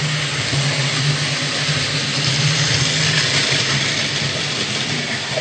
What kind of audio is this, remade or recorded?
recorded